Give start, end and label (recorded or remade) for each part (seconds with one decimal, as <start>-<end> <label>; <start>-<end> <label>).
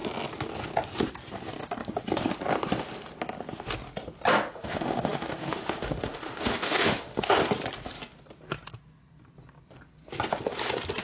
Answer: 0.0-4.5 recorded; 4.5-7.4 remade; 7.4-11.0 recorded